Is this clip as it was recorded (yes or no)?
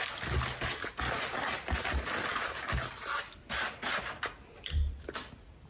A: yes